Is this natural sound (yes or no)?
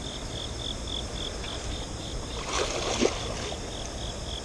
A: yes